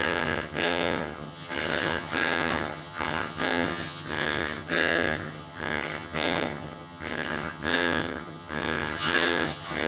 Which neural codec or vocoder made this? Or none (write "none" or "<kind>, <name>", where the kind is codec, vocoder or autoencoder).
vocoder, HiFi-GAN